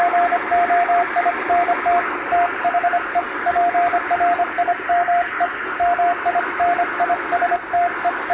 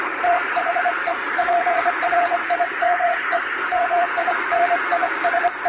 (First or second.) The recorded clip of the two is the first